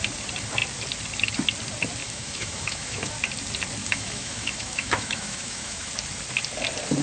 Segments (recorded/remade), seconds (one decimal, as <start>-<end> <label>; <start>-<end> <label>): 0.0-2.0 recorded; 2.0-3.1 remade; 3.1-3.8 recorded; 3.8-5.9 remade; 5.9-7.0 recorded